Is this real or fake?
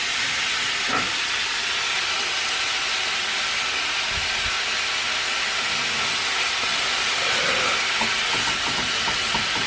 real